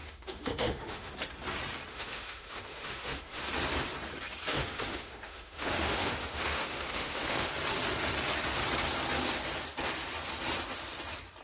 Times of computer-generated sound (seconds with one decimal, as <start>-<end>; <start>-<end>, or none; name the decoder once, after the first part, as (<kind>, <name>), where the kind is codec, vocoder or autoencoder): 0.0-1.1 (autoencoder, DAC-VAE); 1.9-3.4; 4.5-7.5